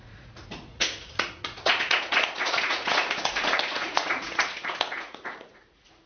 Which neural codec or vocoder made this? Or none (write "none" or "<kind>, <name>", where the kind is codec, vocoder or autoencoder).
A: vocoder, Vocos